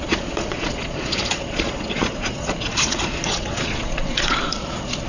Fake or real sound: fake